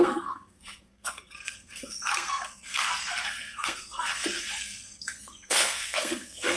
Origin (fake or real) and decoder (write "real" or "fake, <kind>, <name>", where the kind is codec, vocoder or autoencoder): fake, codec, SNAC